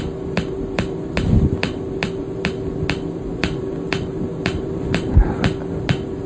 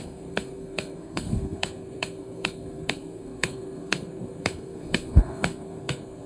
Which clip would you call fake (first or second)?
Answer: second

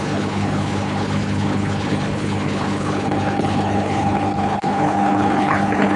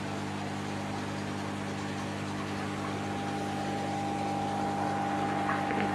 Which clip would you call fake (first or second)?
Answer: first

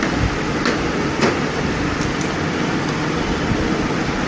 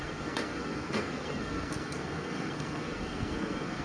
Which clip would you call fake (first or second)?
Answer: second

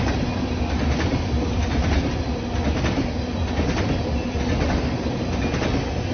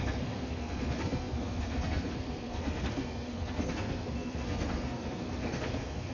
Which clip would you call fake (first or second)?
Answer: second